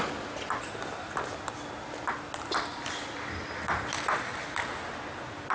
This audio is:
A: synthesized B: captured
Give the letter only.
B